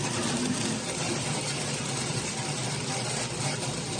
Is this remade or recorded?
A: recorded